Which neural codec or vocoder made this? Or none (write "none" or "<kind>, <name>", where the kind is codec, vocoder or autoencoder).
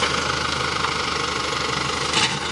none